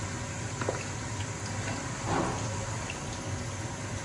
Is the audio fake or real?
real